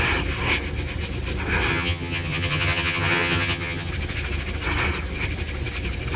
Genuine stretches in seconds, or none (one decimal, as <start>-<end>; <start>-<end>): 0.0-1.7; 3.9-6.2